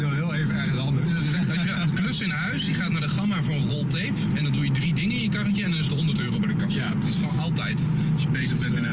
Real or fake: real